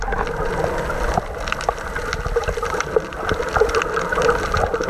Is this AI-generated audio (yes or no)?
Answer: no